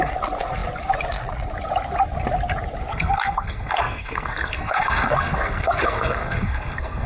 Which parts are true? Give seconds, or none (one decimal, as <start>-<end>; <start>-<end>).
0.0-2.9